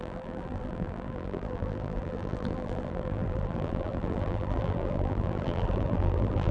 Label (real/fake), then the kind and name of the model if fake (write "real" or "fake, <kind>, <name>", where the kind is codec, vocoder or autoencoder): fake, vocoder, BigVGAN v2